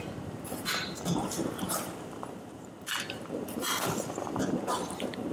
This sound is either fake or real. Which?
fake